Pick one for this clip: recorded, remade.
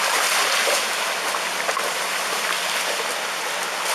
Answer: recorded